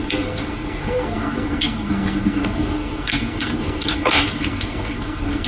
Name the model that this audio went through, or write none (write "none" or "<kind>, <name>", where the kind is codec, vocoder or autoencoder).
codec, SNAC